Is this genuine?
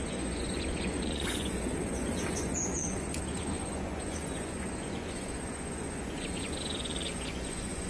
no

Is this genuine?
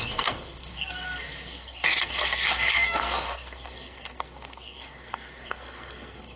no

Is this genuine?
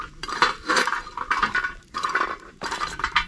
no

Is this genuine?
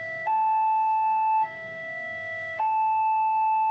no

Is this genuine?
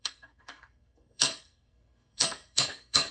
no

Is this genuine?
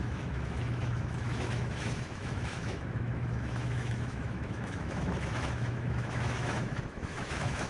no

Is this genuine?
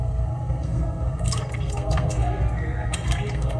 no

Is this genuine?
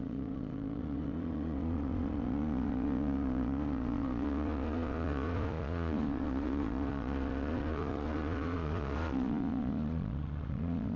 no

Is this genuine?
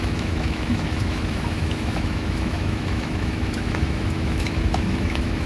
no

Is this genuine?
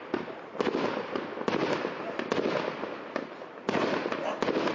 yes